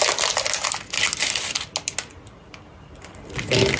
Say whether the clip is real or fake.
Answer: real